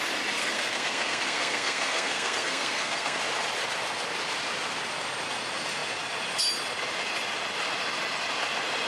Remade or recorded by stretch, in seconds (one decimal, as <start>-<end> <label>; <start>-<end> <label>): 0.0-0.4 recorded; 0.4-3.2 remade; 3.2-8.9 recorded